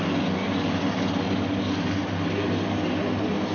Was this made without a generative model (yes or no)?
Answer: yes